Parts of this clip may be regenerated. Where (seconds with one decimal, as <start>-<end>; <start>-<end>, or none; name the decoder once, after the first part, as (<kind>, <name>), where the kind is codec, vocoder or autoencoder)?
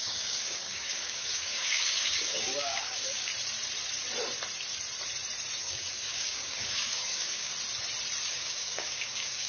0.0-3.3 (codec, DAC); 5.6-7.5; 8.3-9.5